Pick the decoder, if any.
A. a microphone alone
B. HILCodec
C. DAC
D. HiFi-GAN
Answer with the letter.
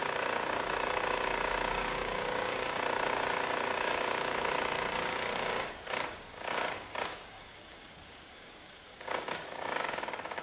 C